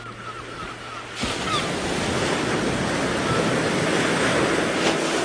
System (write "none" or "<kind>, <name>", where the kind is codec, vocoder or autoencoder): none